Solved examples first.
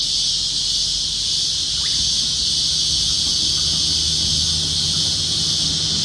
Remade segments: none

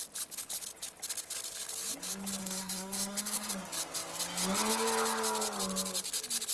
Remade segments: 2.4-3.5 (codec, SNAC)

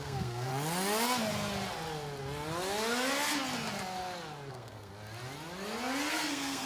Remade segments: 0.0-0.5 (codec, SNAC); 4.5-4.9; 6.1-6.7

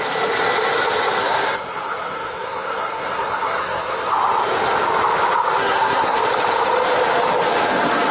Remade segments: 1.2-4.1 (codec, SNAC); 5.6-6.2